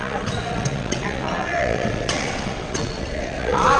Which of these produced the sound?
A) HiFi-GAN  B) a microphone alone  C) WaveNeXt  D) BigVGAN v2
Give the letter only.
C